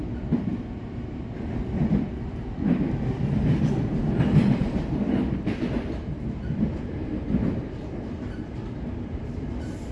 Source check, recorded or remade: remade